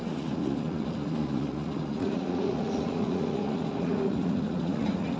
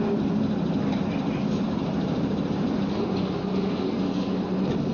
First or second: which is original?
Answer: second